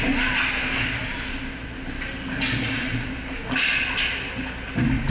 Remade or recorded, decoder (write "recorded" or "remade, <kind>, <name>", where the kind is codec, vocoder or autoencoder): recorded